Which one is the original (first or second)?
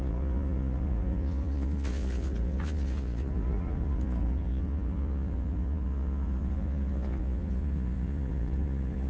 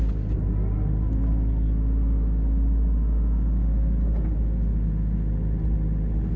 second